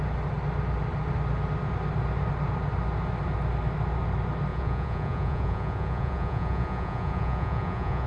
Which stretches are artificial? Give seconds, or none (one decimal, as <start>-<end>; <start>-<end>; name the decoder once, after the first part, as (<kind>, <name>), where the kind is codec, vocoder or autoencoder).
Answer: 4.5-8.1 (vocoder, Vocos)